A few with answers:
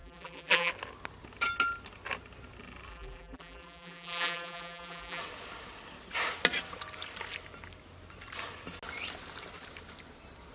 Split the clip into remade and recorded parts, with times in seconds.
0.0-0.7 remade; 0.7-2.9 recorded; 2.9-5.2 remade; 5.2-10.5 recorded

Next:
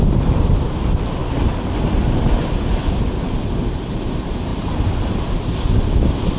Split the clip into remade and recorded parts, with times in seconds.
0.0-4.5 recorded; 4.5-5.2 remade; 5.2-6.4 recorded

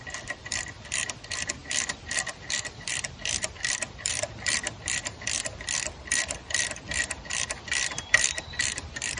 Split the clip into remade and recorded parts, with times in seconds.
0.0-5.0 remade; 5.0-7.2 recorded; 7.2-9.2 remade

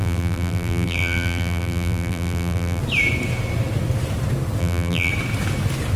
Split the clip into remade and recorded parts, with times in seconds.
0.0-2.8 remade; 2.8-4.6 recorded; 4.6-5.1 remade; 5.1-6.0 recorded

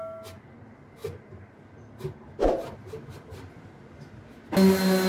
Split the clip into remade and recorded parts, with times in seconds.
0.0-5.1 recorded

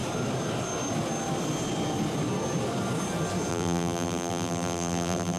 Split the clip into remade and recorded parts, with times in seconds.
0.0-3.5 recorded; 3.5-5.4 remade